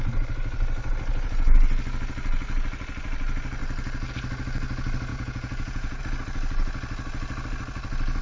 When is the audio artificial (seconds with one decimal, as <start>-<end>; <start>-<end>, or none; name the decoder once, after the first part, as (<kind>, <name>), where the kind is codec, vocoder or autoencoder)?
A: 5.1-6.0 (vocoder, Vocos)